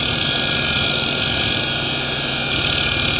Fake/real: real